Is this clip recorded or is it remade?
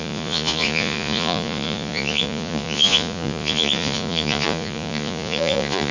remade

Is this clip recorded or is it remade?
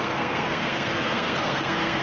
remade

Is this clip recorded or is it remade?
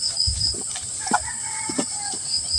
recorded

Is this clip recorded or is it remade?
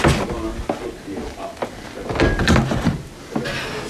recorded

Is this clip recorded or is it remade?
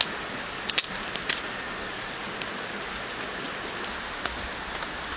recorded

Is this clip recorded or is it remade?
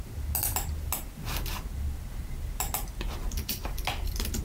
recorded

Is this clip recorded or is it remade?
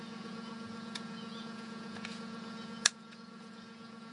remade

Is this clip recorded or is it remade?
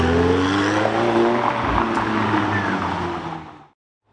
recorded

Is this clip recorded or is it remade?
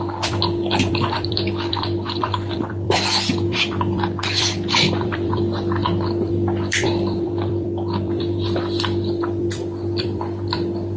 remade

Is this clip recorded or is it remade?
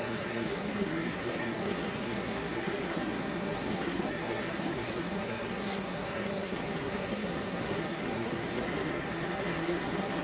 remade